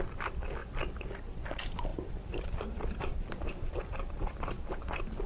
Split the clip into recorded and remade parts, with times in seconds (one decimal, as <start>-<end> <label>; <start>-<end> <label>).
0.0-1.9 recorded; 1.9-5.3 remade